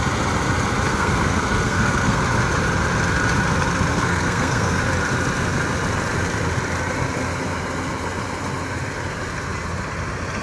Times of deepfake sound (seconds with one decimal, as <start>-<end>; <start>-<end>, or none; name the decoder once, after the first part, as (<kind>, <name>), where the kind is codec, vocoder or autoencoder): 0.9-2.2 (codec, SNAC); 3.9-4.8